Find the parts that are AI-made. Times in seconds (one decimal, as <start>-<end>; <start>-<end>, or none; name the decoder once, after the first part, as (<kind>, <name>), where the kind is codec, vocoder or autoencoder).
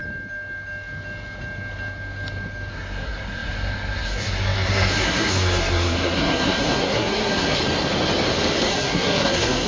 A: 2.7-7.6 (codec, SNAC); 8.7-9.7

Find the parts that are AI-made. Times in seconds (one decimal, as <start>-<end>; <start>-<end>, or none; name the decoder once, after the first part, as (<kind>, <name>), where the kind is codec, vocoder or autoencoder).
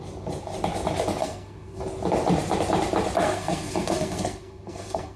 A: 1.2-1.8 (codec, SNAC); 3.2-5.2